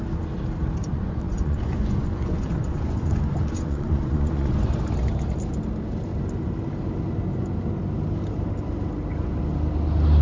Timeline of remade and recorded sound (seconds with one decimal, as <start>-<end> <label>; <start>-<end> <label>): 0.0-0.8 recorded; 0.8-4.7 remade; 4.7-10.2 recorded